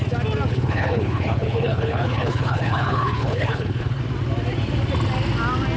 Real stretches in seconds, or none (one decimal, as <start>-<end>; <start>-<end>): 0.0-0.5; 4.0-5.8